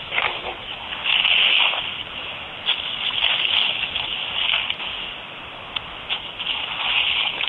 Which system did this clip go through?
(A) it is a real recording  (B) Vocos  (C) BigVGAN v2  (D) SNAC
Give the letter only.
A